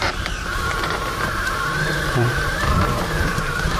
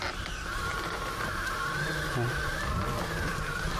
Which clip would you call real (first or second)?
second